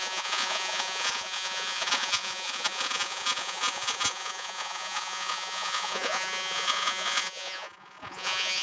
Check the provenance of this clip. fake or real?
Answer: fake